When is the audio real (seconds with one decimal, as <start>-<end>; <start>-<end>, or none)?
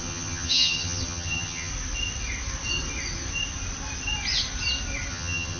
1.7-5.1